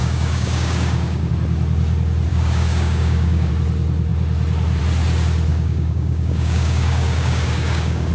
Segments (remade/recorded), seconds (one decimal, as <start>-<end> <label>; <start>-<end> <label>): 0.0-1.3 remade; 1.3-2.3 recorded; 2.3-3.5 remade; 3.5-5.5 recorded; 5.5-8.1 remade

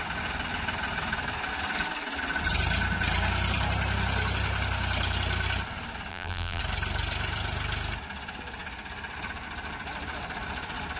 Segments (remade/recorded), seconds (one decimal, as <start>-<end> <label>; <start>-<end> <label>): 0.0-6.1 recorded; 6.1-6.6 remade; 6.6-11.0 recorded

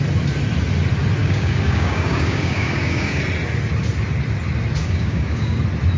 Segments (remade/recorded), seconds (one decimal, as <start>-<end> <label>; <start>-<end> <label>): 0.0-1.2 recorded; 1.2-3.2 remade; 3.2-4.8 recorded; 4.8-5.6 remade; 5.6-6.0 recorded

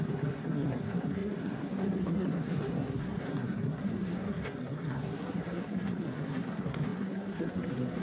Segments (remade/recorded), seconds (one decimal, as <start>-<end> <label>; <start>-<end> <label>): 0.0-8.0 remade

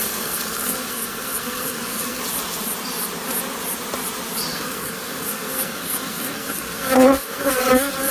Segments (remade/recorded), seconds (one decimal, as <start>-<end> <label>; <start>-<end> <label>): 0.0-2.2 remade; 2.2-4.5 recorded; 4.5-8.1 remade

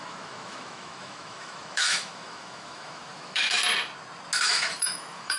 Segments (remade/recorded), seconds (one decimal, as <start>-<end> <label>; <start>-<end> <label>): 0.0-3.6 remade; 3.6-4.4 recorded; 4.4-5.4 remade